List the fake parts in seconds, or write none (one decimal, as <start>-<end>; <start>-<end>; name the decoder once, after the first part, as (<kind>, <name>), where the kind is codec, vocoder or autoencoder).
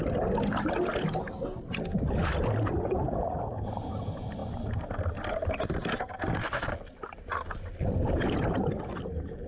none